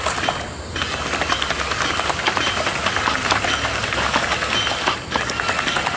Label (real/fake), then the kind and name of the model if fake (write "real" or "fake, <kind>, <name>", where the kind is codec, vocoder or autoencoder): real